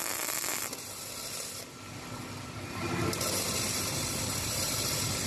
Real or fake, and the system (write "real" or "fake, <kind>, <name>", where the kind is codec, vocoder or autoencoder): real